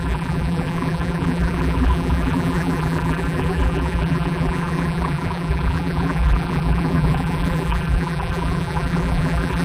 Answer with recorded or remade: remade